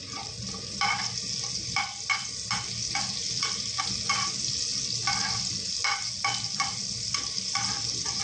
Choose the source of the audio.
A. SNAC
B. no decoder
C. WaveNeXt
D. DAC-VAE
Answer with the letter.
B